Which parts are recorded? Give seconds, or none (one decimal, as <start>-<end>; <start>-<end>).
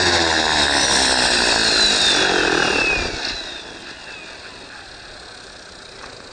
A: 0.0-6.3